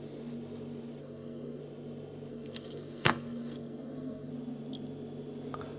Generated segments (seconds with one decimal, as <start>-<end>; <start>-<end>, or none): 1.0-1.6; 2.3-4.3